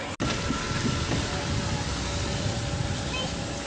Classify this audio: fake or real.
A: real